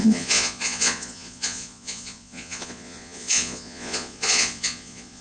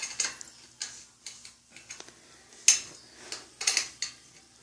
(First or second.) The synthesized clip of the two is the first